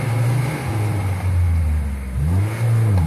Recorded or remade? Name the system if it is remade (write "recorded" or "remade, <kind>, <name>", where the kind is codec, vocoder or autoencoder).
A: recorded